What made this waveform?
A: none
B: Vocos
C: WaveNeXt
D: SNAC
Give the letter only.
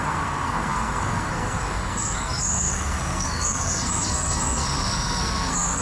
D